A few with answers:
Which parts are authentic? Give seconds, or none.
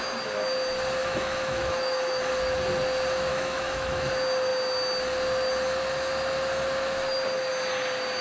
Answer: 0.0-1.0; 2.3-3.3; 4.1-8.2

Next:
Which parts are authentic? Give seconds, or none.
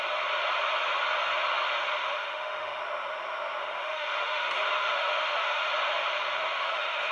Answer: 0.0-2.0; 2.8-3.6; 5.7-6.4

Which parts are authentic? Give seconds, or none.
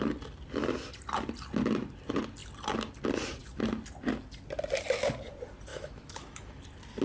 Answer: 0.0-5.7; 6.6-7.0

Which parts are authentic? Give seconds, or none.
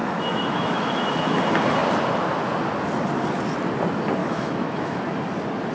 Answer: 1.4-4.2; 5.0-5.7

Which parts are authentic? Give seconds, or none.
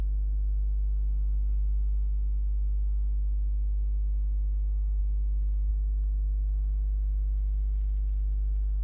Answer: 0.0-8.8